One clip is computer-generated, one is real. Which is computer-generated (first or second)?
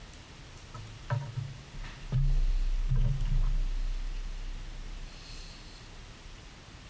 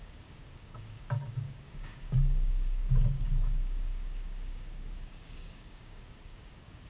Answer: second